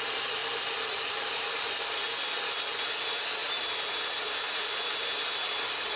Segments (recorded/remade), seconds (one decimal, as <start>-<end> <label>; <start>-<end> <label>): 0.0-0.4 recorded; 0.4-2.0 remade; 2.0-6.0 recorded